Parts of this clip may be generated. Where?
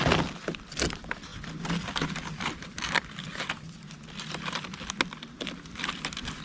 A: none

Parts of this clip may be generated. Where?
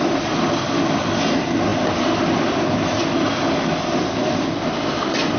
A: none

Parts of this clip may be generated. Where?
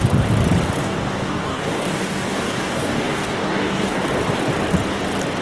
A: 0.8-4.0 (codec, DAC)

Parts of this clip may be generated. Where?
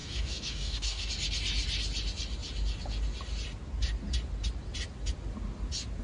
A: 0.0-1.1 (codec, DAC)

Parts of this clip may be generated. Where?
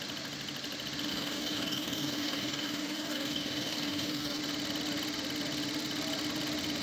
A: 1.1-4.4 (codec, DAC)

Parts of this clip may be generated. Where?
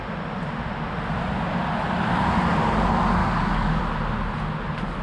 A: 3.2-3.8 (codec, DAC)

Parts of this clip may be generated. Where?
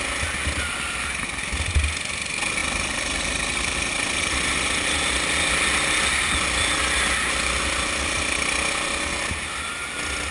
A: none